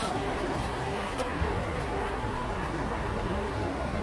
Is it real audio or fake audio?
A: fake